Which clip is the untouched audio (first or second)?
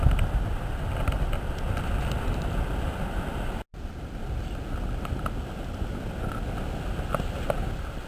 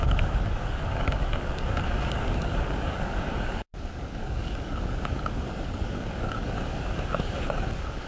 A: first